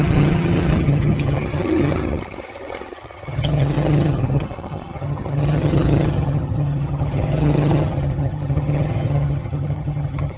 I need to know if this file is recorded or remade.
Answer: remade